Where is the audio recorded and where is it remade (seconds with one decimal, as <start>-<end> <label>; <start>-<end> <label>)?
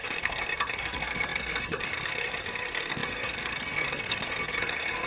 0.0-5.1 remade